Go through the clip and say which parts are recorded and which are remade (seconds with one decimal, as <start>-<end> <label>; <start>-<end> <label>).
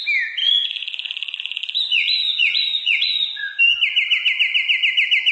0.0-0.4 recorded; 0.4-3.6 remade; 3.6-5.3 recorded